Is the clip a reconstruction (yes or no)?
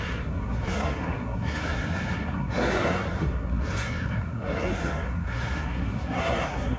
yes